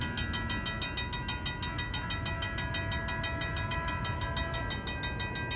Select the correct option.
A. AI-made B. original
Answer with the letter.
B